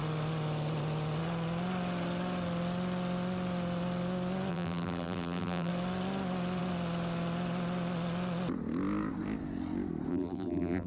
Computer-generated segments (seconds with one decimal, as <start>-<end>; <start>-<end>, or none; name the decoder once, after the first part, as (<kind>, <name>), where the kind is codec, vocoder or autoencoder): 4.5-5.7 (vocoder, BigVGAN v2); 10.1-10.9